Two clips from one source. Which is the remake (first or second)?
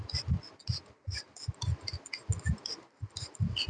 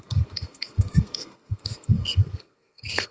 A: second